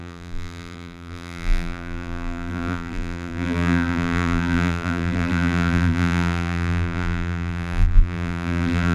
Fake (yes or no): yes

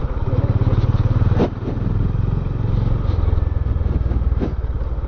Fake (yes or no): no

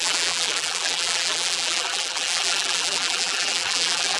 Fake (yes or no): yes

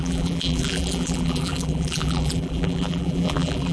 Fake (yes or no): yes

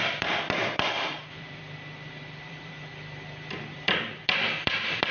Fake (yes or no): yes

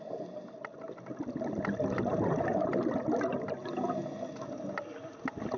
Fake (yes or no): no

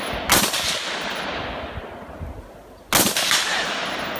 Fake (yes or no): no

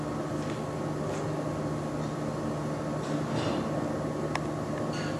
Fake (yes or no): no